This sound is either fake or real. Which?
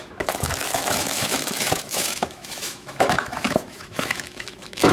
fake